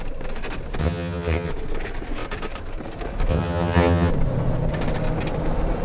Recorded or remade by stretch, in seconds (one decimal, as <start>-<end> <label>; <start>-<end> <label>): 0.0-0.8 recorded; 0.8-1.5 remade; 1.5-3.3 recorded; 3.3-4.1 remade; 4.1-5.8 recorded